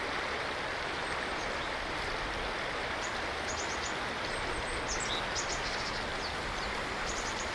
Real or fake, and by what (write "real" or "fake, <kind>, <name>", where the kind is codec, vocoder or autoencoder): real